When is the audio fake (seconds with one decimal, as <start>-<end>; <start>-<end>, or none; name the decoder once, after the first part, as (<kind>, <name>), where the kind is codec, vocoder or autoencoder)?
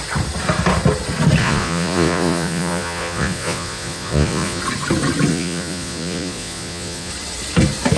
1.4-4.6 (vocoder, Vocos); 5.3-7.1